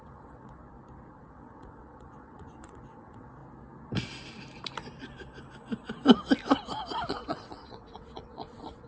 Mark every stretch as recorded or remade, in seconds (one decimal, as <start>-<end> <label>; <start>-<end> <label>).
0.0-0.6 remade; 0.6-1.2 recorded; 1.2-3.4 remade; 3.4-7.1 recorded; 7.1-8.9 remade